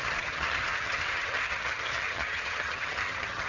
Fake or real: fake